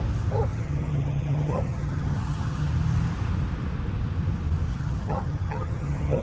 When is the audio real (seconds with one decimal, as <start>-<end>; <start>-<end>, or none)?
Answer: 0.0-0.5; 2.7-4.7